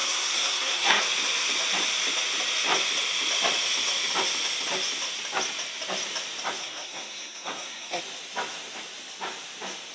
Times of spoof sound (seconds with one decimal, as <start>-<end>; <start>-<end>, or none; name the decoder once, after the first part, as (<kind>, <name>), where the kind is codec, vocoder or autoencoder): 0.0-1.0 (codec, SNAC); 6.6-8.0